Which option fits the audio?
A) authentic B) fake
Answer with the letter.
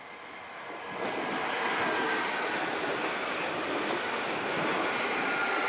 A